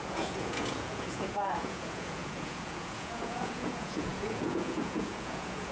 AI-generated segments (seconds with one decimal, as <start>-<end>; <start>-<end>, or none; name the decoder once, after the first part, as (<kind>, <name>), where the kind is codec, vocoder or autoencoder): 0.0-5.7 (vocoder, Vocos)